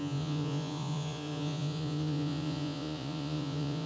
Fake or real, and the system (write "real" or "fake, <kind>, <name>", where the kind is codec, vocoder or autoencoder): fake, vocoder, Vocos